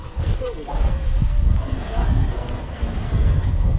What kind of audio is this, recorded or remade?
remade